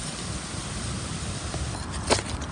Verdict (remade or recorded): recorded